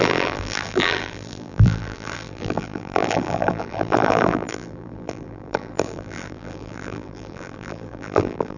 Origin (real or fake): fake